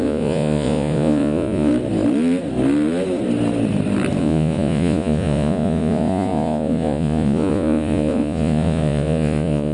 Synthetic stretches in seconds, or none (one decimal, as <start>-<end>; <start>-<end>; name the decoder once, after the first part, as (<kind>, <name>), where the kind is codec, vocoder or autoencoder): 0.0-1.7 (vocoder, Vocos); 4.2-9.7